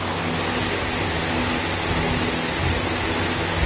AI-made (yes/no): no